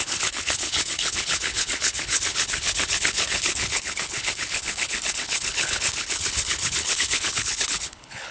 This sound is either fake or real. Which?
fake